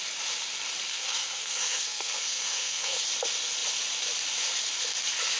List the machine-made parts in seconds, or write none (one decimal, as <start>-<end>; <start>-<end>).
0.9-3.0